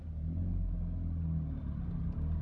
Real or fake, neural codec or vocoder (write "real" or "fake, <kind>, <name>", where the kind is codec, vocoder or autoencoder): real